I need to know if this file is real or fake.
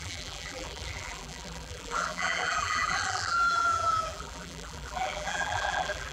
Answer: fake